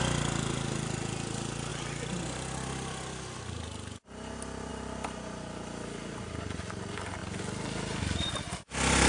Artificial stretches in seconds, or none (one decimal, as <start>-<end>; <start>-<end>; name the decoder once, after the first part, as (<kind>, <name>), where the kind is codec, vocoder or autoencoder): none